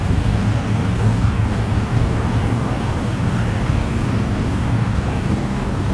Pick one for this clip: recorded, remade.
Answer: remade